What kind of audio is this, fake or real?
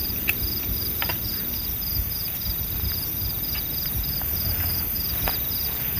fake